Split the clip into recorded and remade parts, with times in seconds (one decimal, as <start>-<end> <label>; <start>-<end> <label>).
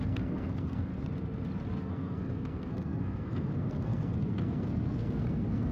0.0-0.9 remade; 0.9-1.9 recorded; 1.9-5.7 remade